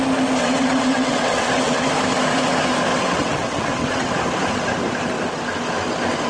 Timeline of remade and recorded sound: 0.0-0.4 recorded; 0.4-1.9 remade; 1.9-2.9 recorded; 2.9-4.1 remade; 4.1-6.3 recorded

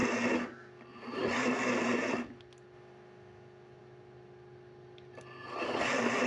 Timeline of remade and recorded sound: 0.0-6.3 recorded

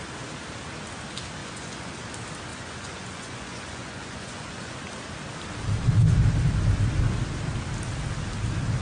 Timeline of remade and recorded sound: 0.0-1.4 recorded; 1.4-1.9 remade; 1.9-2.5 recorded; 2.5-4.8 remade; 4.8-8.8 recorded